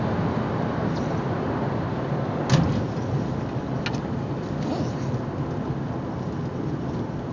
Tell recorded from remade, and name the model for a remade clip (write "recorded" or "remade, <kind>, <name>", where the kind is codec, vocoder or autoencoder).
recorded